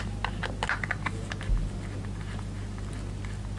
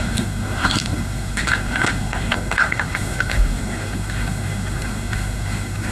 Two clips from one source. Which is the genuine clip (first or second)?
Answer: first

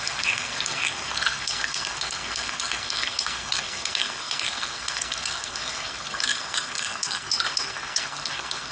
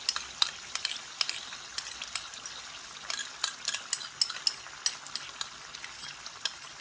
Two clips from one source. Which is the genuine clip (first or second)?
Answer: second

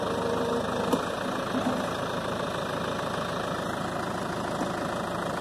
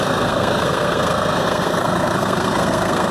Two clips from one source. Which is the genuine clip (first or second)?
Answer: first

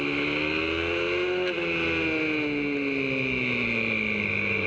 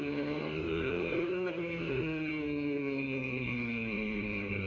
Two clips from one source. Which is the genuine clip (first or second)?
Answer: first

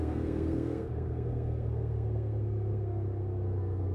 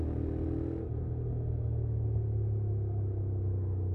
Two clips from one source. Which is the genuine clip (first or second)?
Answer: second